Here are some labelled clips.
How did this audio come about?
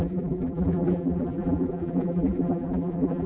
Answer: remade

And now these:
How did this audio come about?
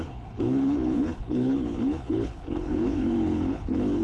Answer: remade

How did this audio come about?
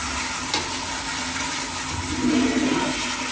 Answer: recorded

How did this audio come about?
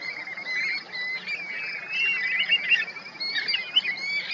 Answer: recorded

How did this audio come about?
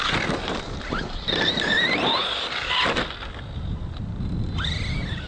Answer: recorded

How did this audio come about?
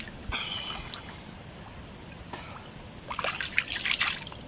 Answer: recorded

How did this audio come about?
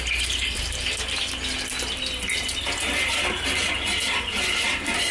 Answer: recorded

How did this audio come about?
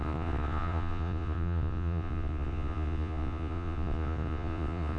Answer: remade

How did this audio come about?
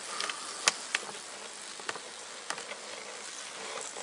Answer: recorded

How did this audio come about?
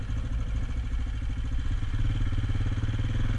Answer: recorded